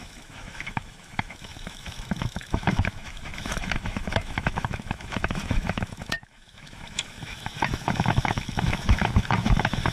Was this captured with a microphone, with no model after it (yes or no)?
no